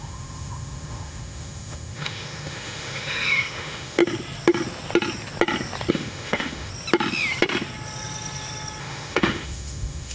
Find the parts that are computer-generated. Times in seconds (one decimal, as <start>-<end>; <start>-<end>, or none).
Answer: 0.0-4.0; 5.9-6.7; 8.8-10.1

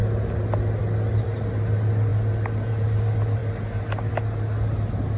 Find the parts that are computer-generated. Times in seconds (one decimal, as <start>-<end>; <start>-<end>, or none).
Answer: none

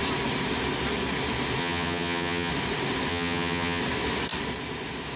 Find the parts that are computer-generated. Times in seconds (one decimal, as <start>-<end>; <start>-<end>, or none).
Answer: 1.6-2.5; 3.1-3.8

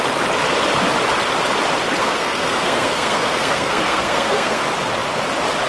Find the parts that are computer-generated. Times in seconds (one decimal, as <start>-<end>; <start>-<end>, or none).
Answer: 2.0-4.6

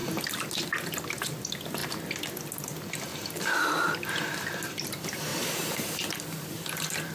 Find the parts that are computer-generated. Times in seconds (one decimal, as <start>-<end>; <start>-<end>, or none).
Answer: 0.0-0.5; 3.1-4.7; 5.3-7.1